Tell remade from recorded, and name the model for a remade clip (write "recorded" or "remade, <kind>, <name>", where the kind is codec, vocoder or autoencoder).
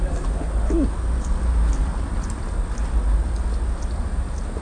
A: recorded